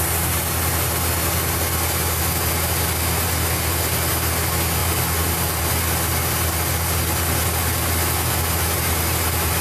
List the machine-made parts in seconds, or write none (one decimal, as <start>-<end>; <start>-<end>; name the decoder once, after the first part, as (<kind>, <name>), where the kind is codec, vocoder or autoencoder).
none